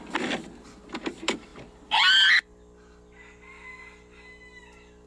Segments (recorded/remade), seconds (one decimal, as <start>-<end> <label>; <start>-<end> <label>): 0.0-5.1 recorded